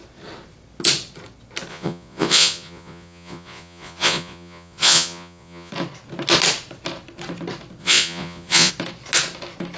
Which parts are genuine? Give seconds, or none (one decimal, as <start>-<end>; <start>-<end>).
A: 0.0-1.7; 5.7-7.8; 8.7-9.8